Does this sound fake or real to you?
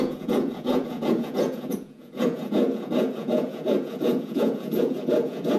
fake